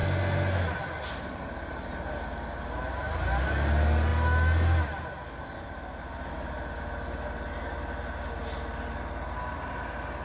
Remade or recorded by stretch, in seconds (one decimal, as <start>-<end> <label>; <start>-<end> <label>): 0.0-10.2 recorded